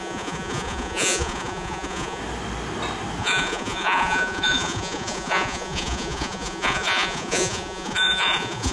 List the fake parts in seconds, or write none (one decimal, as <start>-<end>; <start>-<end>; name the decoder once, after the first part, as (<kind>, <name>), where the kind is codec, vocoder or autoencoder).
0.0-2.2 (vocoder, Vocos); 3.2-8.7